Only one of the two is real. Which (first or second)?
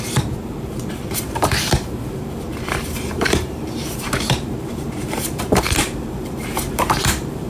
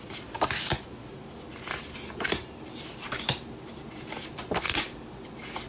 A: second